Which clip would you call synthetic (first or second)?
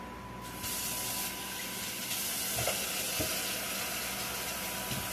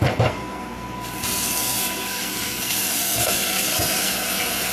second